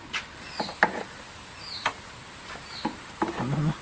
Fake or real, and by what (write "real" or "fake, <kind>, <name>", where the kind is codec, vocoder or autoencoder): real